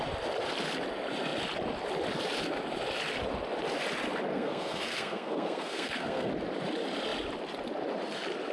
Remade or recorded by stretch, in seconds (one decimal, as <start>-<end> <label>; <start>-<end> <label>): 0.0-4.3 recorded; 4.3-6.3 remade; 6.3-8.5 recorded